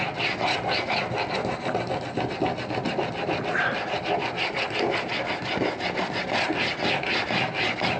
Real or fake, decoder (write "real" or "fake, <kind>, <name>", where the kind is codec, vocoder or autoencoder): real